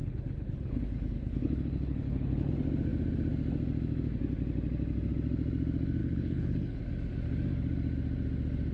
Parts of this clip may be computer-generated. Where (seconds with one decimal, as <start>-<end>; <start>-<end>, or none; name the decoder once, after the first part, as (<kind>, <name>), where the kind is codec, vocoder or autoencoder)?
0.0-2.5 (codec, HILCodec); 6.0-6.8